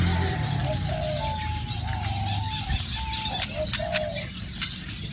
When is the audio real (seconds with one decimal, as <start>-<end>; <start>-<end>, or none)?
0.0-5.1